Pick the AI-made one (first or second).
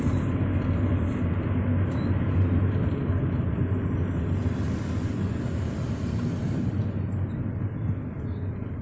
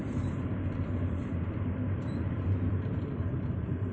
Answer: second